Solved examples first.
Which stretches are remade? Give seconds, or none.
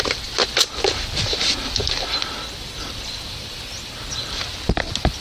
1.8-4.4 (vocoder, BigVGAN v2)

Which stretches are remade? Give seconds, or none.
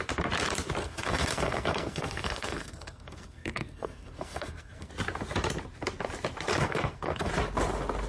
0.8-4.9 (codec, SNAC); 6.5-7.3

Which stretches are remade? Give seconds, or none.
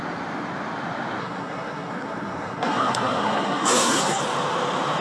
1.2-4.2 (codec, SNAC)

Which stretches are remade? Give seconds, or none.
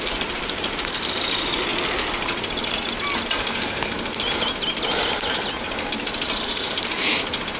0.0-1.7 (vocoder, BigVGAN v2); 5.9-7.6